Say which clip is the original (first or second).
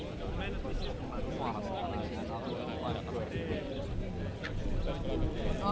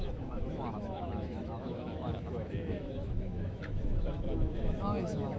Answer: first